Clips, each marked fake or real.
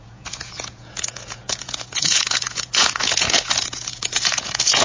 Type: fake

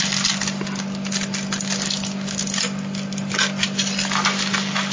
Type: real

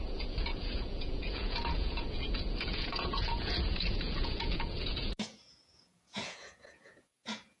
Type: fake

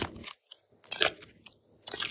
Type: real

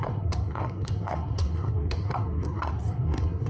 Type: fake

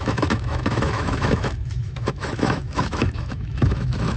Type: fake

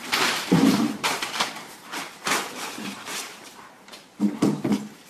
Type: fake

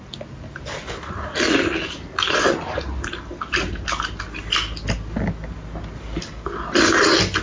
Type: real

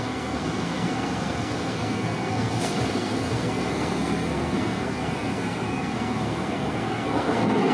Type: fake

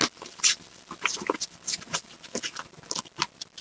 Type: real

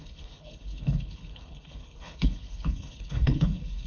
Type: fake